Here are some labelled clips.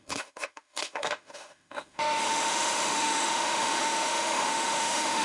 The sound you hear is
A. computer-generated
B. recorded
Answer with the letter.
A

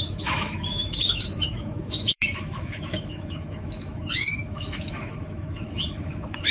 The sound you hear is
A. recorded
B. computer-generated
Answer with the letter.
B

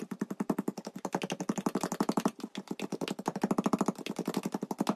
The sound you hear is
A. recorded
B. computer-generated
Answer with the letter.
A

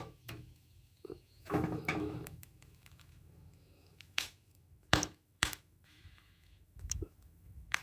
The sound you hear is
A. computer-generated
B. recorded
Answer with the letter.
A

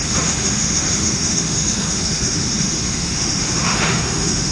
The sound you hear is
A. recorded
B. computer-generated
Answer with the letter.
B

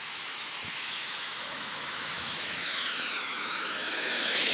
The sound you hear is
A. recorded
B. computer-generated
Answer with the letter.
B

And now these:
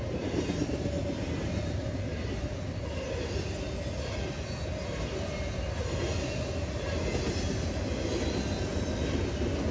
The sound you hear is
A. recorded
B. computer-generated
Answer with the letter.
A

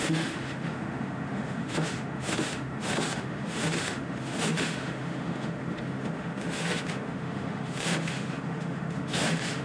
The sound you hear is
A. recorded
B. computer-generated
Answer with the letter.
B